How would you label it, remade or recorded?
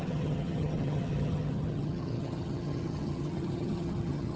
remade